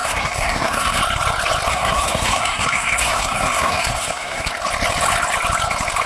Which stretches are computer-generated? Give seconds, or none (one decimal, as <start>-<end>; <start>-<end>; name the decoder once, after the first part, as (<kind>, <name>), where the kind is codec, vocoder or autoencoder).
0.0-1.0 (codec, SNAC); 1.7-4.5